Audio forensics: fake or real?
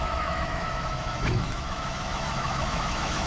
fake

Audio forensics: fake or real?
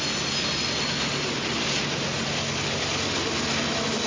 real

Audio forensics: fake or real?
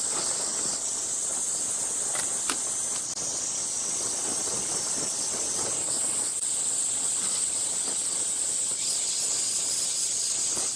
real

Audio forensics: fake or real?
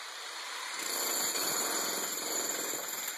fake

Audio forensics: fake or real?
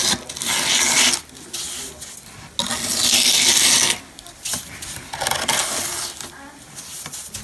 real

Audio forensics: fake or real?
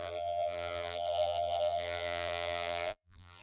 fake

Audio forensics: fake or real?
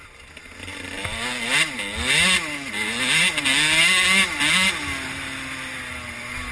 real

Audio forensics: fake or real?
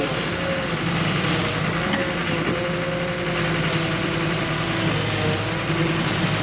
real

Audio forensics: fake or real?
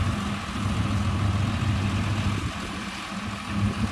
real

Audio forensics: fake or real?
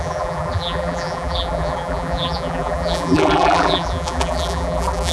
fake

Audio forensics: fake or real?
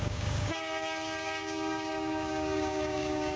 fake